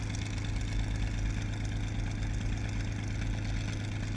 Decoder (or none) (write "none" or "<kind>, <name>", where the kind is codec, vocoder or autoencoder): none